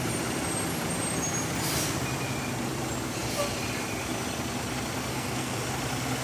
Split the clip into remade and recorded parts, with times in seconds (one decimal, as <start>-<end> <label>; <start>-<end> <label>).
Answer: 0.0-5.1 recorded; 5.1-5.6 remade; 5.6-6.2 recorded